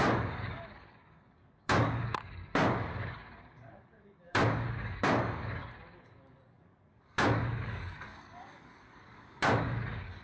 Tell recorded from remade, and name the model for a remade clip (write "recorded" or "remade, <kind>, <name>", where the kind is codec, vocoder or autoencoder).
remade, codec, DAC